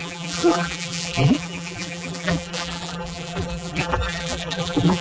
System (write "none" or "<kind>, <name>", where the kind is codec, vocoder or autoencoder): vocoder, BigVGAN v2